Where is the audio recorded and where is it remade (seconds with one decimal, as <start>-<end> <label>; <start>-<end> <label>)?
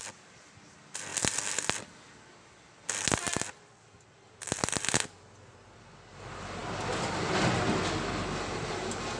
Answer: 0.0-9.2 recorded